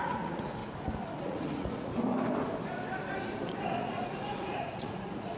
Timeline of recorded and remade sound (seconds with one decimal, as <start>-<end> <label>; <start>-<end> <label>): 0.0-0.6 remade; 0.6-1.2 recorded; 1.2-1.9 remade; 1.9-3.8 recorded; 3.8-5.4 remade